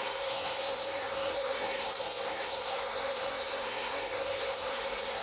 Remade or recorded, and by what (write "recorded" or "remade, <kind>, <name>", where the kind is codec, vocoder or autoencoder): remade, codec, SNAC